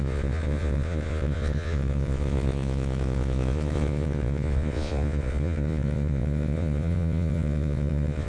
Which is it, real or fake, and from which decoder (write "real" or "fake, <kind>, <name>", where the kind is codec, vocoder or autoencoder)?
fake, vocoder, Vocos